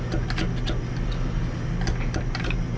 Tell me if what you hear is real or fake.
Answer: real